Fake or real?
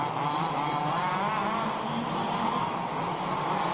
real